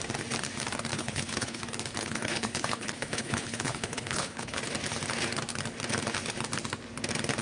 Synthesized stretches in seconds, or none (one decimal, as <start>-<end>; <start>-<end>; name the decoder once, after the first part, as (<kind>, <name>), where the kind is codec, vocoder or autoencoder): 0.9-1.6 (codec, HILCodec); 2.0-4.6